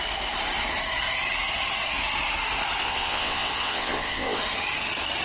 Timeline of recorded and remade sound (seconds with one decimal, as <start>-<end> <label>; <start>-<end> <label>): 0.0-2.8 recorded; 2.8-4.4 remade; 4.4-5.2 recorded